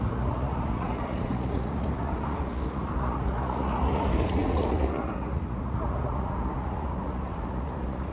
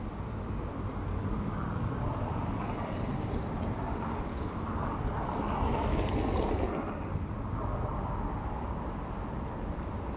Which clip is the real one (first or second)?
second